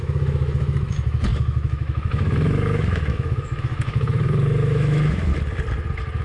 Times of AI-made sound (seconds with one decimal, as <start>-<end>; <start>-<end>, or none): 0.0-5.3